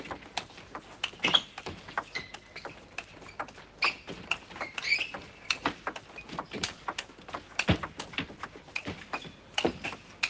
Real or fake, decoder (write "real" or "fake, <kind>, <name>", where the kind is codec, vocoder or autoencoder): real